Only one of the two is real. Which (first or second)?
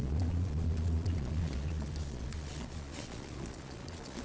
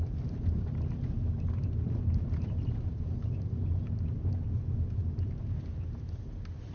second